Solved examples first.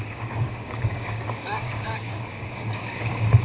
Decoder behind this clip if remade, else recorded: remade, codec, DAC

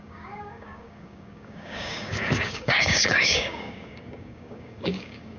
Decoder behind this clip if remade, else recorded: remade, codec, DAC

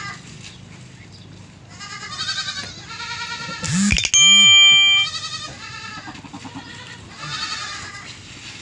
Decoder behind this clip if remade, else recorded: recorded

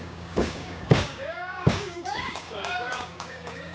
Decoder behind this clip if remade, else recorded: remade, codec, DAC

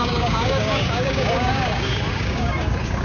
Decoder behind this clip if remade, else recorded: remade, codec, DAC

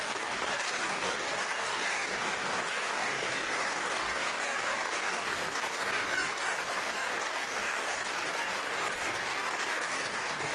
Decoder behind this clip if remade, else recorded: remade, codec, DAC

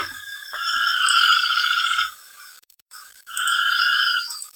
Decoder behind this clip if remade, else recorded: remade, codec, DAC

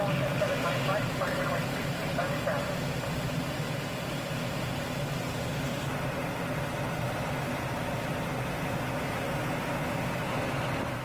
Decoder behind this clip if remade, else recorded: recorded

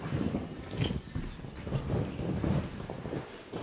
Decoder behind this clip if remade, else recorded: recorded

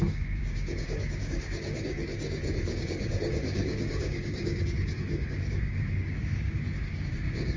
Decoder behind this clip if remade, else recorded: remade, codec, DAC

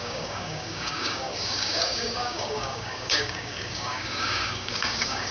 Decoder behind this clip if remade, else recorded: remade, codec, DAC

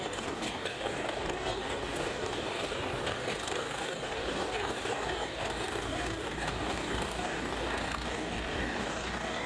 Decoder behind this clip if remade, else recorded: remade, codec, DAC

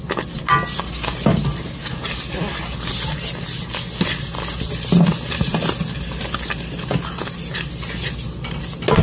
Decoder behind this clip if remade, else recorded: recorded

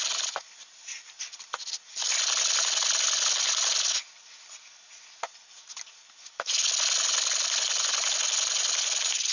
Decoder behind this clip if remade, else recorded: recorded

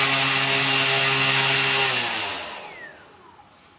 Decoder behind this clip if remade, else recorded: recorded